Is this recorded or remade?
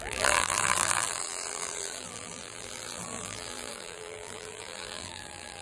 remade